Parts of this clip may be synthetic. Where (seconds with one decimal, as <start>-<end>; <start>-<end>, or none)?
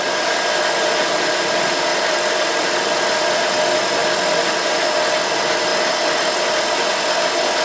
none